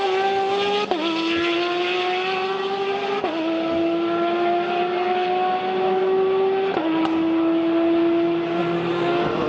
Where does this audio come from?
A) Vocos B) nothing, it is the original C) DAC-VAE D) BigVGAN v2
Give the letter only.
B